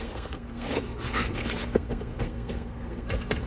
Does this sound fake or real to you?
fake